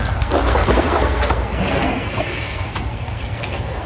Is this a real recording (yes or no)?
no